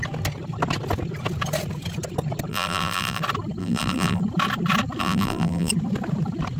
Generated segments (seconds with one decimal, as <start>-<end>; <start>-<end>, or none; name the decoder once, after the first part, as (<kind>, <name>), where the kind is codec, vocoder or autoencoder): 2.5-3.2 (vocoder, BigVGAN v2); 3.6-4.2; 5.0-5.7